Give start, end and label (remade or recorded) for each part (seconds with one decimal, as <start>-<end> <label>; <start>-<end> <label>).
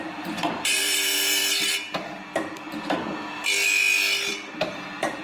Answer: 0.0-1.4 remade; 1.4-4.3 recorded; 4.3-5.2 remade